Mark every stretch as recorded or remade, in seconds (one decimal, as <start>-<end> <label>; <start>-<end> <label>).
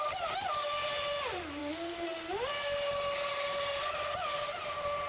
0.0-5.1 recorded